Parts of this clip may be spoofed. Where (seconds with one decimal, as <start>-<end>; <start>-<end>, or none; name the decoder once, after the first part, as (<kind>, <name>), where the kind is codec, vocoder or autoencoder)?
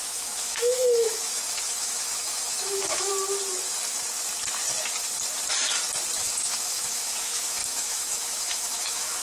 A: 0.0-3.1 (autoencoder, DAC-VAE); 6.2-9.2